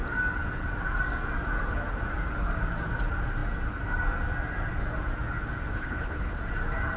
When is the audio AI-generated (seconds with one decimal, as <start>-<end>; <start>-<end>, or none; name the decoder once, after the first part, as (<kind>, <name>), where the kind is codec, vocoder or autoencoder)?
5.7-6.4 (codec, HILCodec)